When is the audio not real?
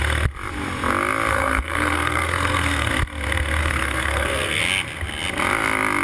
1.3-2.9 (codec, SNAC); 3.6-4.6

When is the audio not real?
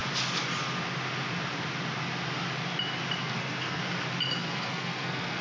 3.2-3.8 (codec, SNAC); 4.4-5.4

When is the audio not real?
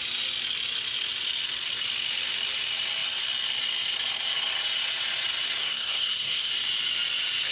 5.6-6.5 (codec, SNAC)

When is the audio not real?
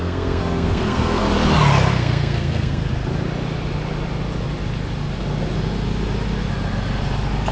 0.0-1.2 (codec, SNAC); 1.9-2.8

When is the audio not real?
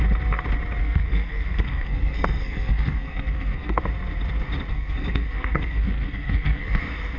0.8-3.8 (codec, SNAC); 4.7-6.8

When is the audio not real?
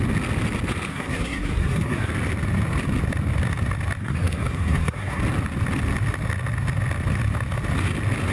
0.9-2.1 (codec, SNAC); 4.0-5.2